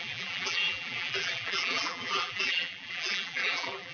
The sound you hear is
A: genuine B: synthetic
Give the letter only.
B